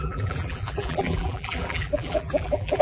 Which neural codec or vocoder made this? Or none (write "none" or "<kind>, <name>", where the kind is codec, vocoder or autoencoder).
vocoder, BigVGAN v2